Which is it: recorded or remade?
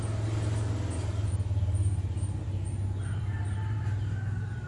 recorded